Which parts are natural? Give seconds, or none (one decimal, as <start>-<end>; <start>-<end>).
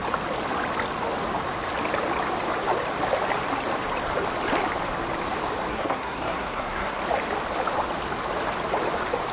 0.0-5.7; 7.0-9.3